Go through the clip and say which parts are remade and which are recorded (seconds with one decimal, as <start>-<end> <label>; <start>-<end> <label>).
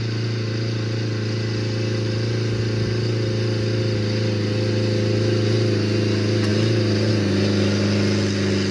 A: 0.0-8.7 recorded